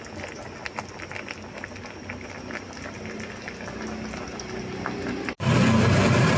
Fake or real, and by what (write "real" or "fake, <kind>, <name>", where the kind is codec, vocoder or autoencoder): real